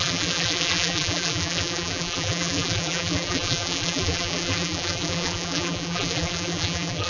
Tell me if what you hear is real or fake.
fake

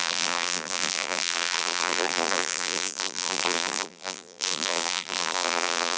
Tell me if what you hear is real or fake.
fake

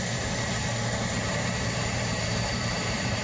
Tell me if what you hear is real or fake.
fake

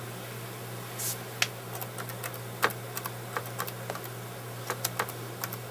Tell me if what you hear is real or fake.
real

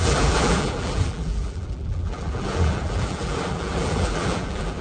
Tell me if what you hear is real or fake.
fake